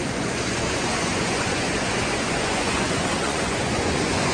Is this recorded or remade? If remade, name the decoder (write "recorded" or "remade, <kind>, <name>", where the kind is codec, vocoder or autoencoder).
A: remade, vocoder, Vocos